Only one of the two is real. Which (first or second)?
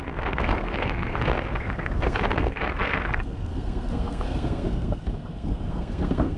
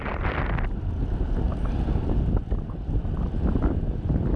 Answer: second